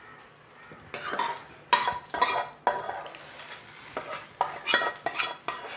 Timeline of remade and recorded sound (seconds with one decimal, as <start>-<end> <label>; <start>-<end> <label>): 0.0-5.8 recorded